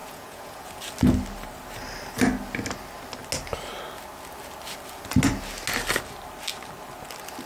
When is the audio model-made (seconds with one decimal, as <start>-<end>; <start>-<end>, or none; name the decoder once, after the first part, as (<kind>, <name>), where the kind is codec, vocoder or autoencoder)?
0.0-0.8 (vocoder, Vocos)